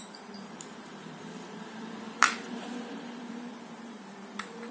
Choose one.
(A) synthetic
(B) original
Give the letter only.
A